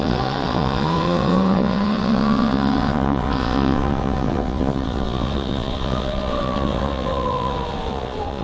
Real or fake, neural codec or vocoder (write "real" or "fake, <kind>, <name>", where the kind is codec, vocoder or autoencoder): fake, vocoder, WaveNeXt